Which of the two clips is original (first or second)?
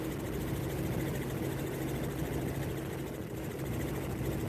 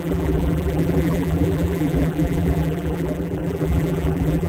first